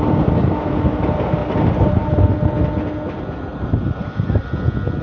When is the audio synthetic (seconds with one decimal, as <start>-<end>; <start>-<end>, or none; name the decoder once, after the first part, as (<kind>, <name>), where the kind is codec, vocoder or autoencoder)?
1.4-2.1 (vocoder, BigVGAN v2); 3.5-4.5